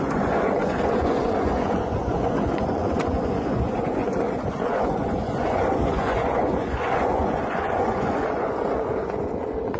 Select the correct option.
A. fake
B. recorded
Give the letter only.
A